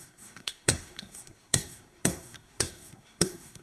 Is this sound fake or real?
fake